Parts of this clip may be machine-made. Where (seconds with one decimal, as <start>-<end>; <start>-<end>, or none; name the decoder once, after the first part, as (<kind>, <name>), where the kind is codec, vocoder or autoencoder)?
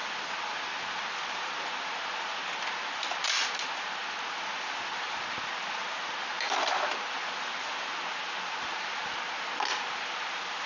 none